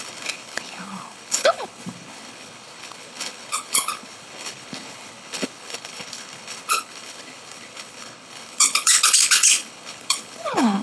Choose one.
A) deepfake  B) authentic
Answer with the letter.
A